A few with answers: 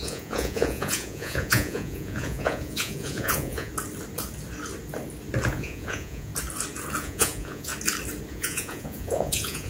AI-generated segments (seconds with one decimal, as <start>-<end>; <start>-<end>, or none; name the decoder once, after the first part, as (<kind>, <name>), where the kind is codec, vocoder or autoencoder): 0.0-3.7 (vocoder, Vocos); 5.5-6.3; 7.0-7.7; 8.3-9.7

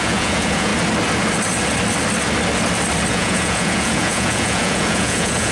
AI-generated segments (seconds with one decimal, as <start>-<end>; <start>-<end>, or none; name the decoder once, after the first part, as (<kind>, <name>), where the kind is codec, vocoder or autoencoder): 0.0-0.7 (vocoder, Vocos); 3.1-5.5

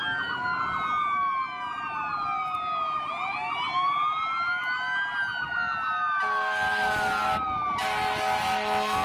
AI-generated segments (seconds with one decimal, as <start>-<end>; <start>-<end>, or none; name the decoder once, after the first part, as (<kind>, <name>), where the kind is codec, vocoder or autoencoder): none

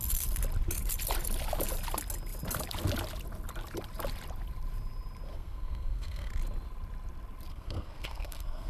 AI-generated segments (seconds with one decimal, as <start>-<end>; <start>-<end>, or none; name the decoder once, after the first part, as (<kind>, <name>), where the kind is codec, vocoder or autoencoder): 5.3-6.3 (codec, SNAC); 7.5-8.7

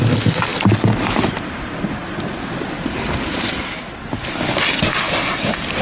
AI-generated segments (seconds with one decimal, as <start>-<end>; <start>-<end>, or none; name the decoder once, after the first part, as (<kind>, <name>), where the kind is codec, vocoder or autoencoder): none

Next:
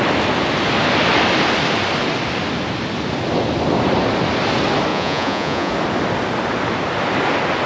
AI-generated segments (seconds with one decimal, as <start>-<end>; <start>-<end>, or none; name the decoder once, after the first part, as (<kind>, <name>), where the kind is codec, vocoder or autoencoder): 4.9-5.7 (vocoder, Vocos)

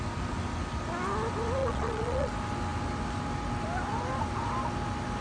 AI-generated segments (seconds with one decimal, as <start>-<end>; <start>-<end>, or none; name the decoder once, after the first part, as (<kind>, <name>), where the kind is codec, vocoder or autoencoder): 1.6-2.3 (vocoder, Vocos)